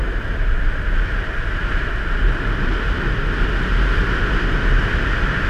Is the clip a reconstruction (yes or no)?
no